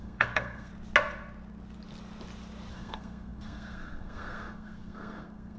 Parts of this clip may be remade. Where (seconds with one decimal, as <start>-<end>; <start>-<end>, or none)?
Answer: 0.0-0.7; 2.7-5.6